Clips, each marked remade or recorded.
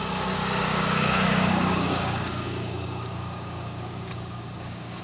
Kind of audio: remade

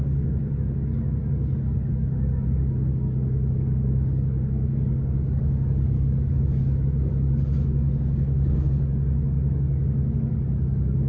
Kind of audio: remade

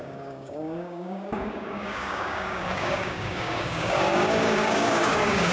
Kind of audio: remade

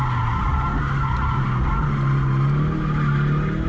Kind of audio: recorded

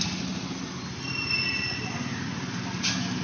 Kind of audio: recorded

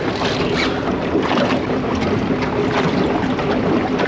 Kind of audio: recorded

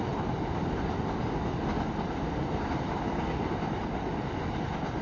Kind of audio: recorded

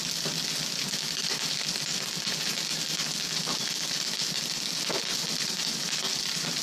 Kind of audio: recorded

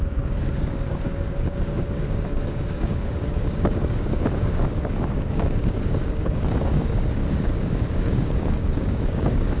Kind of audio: remade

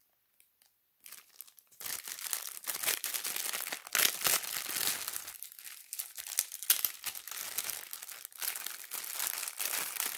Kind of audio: recorded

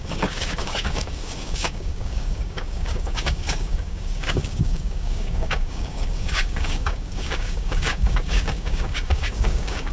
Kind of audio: remade